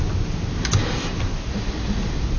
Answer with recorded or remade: recorded